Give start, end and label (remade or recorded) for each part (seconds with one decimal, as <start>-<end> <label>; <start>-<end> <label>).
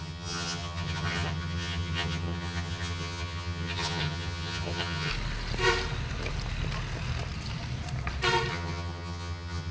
0.0-5.1 remade; 5.1-8.5 recorded; 8.5-9.7 remade